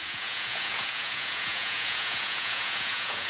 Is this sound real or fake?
fake